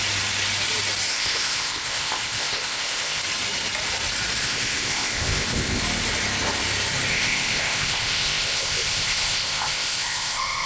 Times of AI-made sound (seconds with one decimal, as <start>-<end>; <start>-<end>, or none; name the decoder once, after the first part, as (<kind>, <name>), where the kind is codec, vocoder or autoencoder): 1.1-3.2 (codec, ZipCodec); 4.4-5.8; 7.1-10.7